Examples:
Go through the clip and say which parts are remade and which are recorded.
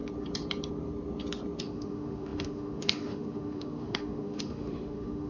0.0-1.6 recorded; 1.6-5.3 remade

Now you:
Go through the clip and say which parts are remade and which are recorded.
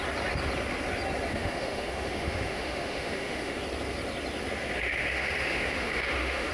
0.0-1.3 recorded; 1.3-3.6 remade; 3.6-4.8 recorded; 4.8-6.5 remade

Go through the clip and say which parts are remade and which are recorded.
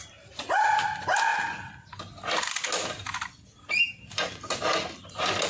0.0-5.5 recorded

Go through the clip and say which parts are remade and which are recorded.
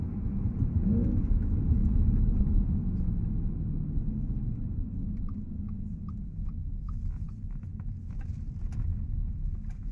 0.0-9.9 recorded